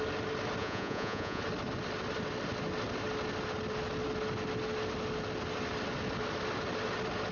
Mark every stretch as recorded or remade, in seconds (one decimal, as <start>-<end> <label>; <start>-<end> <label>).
0.0-0.6 recorded; 0.6-1.4 remade; 1.4-7.3 recorded